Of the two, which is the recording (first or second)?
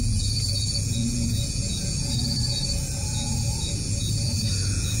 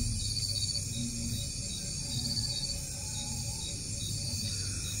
second